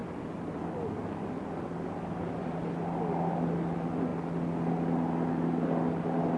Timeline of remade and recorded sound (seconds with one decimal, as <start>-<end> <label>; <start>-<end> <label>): 0.0-6.4 recorded